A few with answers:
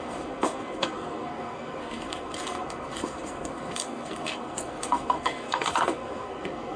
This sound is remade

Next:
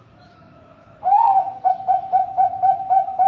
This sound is remade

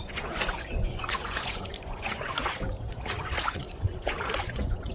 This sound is remade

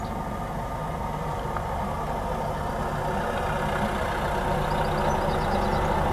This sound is recorded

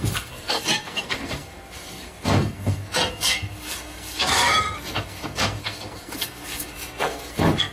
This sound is remade